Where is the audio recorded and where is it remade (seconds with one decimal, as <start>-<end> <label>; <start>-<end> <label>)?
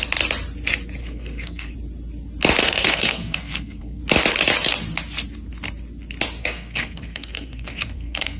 0.0-1.0 recorded; 1.0-1.7 remade; 1.7-2.6 recorded; 2.6-4.0 remade; 4.0-6.4 recorded; 6.4-8.4 remade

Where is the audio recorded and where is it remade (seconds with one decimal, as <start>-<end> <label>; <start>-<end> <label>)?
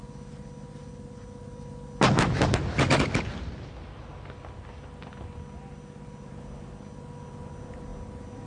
0.0-8.5 recorded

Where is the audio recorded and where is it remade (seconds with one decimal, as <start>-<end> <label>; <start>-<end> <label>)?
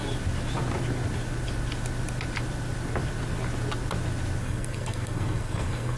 0.0-4.4 recorded; 4.4-6.0 remade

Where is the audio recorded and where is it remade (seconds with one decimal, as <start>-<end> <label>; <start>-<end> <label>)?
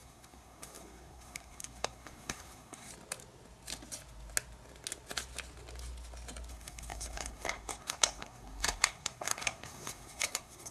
0.0-2.9 remade; 2.9-6.5 recorded; 6.5-10.7 remade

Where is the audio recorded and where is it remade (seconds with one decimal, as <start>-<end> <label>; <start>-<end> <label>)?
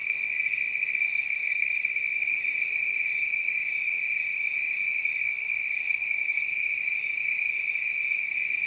0.0-2.3 remade; 2.3-5.2 recorded; 5.2-6.5 remade; 6.5-8.2 recorded; 8.2-8.7 remade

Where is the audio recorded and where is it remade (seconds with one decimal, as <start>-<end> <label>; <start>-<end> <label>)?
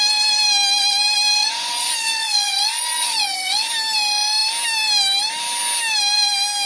0.0-1.4 recorded; 1.4-3.7 remade; 3.7-6.6 recorded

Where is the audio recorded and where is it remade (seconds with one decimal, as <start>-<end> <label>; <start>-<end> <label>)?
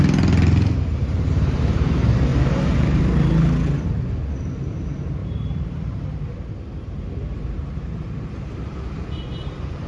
0.0-1.0 recorded; 1.0-1.9 remade; 1.9-2.3 recorded; 2.3-3.0 remade; 3.0-5.2 recorded; 5.2-9.9 remade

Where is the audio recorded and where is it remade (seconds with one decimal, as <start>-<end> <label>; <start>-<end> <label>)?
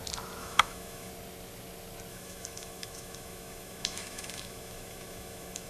0.0-0.4 recorded; 0.4-1.1 remade; 1.1-2.1 recorded; 2.1-5.7 remade